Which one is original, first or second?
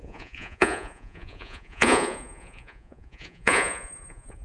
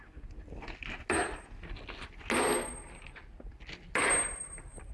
second